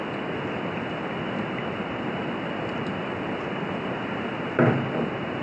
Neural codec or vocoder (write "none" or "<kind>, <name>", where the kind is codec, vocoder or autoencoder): none